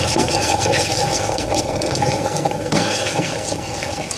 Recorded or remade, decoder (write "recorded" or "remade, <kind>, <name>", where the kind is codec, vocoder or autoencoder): remade, codec, SNAC